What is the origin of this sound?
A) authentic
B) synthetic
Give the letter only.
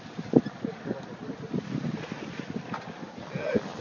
A